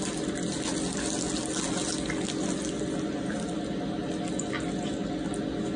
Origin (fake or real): real